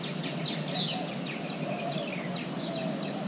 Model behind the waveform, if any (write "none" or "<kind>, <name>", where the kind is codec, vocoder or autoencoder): none